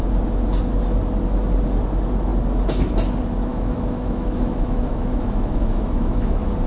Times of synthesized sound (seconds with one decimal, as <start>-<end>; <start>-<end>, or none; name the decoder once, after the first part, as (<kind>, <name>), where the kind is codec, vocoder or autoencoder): 3.5-6.3 (autoencoder, DAC-VAE)